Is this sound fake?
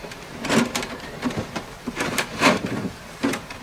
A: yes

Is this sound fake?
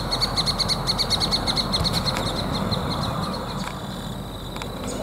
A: no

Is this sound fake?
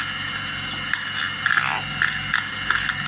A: no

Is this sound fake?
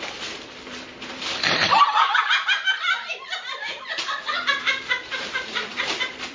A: yes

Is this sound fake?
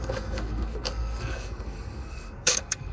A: yes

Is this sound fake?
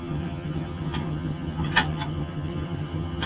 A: yes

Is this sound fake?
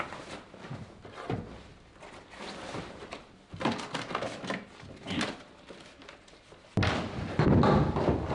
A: no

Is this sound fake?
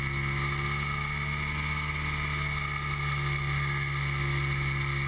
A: no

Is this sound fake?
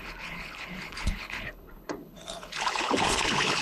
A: yes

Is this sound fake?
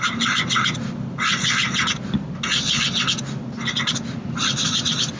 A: no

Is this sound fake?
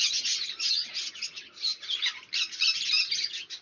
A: no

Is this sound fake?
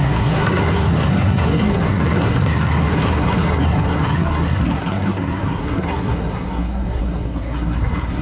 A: yes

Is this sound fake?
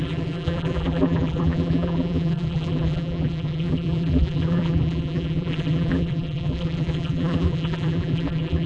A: yes